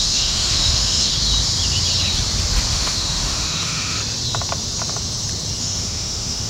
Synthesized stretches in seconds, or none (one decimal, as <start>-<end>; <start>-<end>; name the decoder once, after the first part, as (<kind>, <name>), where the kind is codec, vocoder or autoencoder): 0.0-1.1 (autoencoder, DAC-VAE); 2.7-4.0; 5.6-6.5